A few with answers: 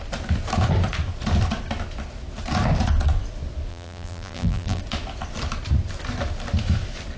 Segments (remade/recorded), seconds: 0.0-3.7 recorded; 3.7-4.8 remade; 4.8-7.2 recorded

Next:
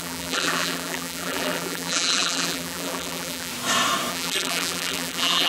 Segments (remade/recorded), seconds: 0.0-3.5 remade; 3.5-4.1 recorded; 4.1-5.5 remade

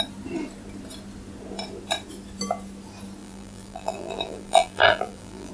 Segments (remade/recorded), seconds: 0.0-3.2 recorded; 3.2-5.5 remade

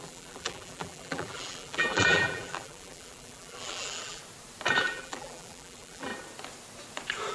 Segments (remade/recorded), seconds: 0.0-4.2 remade; 4.2-4.8 recorded; 4.8-6.1 remade; 6.1-7.3 recorded

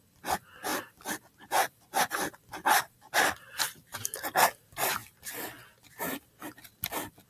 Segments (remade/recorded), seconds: 0.0-0.7 recorded; 0.7-2.2 remade; 2.2-3.9 recorded; 3.9-4.6 remade; 4.6-7.3 recorded

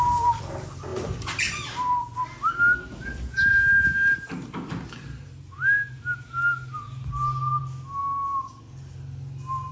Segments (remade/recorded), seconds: 0.0-0.9 recorded; 0.9-1.7 remade; 1.7-9.7 recorded

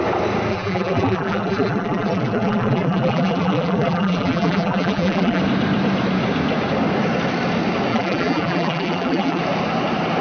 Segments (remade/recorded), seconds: 0.0-0.5 recorded; 0.5-5.4 remade; 5.4-7.9 recorded; 7.9-9.4 remade; 9.4-10.2 recorded

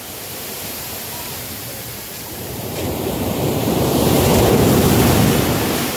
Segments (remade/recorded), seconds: 0.0-4.3 remade; 4.3-5.6 recorded; 5.6-6.0 remade